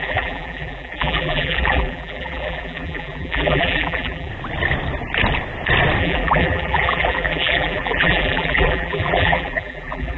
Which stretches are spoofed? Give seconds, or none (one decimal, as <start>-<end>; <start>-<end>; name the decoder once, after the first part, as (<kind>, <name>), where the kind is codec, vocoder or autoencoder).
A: 0.0-4.3 (vocoder, BigVGAN v2); 6.0-10.2